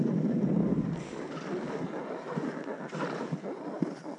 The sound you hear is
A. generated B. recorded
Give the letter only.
B